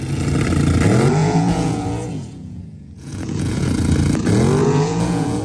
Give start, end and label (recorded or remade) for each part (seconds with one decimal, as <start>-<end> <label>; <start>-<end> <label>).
0.0-1.2 recorded; 1.2-3.7 remade; 3.7-4.6 recorded; 4.6-5.4 remade